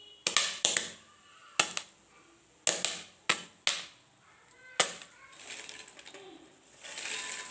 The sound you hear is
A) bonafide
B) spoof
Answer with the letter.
A